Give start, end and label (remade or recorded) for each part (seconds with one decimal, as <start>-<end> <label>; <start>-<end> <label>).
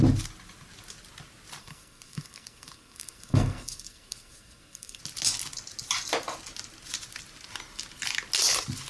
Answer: 0.0-1.6 recorded; 1.6-5.0 remade; 5.0-8.9 recorded